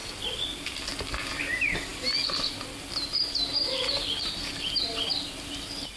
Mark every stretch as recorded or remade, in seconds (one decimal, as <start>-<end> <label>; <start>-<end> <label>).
0.0-6.0 recorded